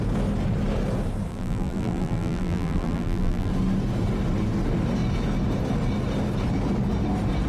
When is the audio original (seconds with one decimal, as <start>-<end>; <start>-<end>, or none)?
0.0-1.3; 3.5-7.5